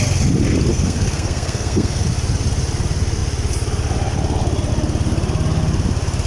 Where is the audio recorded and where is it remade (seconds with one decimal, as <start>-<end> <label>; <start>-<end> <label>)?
0.0-0.7 recorded; 0.7-2.0 remade; 2.0-6.3 recorded